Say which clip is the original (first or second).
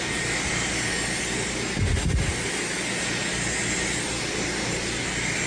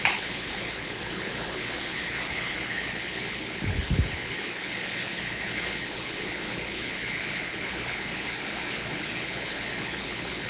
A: first